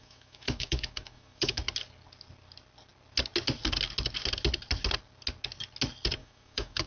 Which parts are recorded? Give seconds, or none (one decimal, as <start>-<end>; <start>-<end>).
1.6-6.2